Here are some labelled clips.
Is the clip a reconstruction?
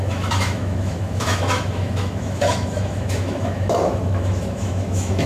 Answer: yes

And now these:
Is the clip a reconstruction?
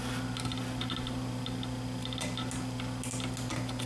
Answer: no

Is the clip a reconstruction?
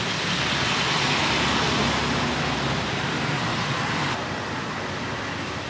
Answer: no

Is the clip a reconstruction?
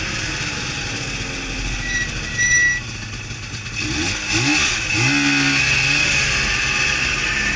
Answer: no